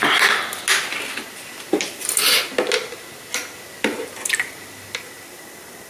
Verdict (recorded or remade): recorded